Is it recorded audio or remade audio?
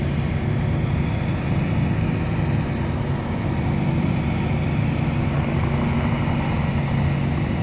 recorded